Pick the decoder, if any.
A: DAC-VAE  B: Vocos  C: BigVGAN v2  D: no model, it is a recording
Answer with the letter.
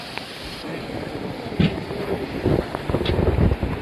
C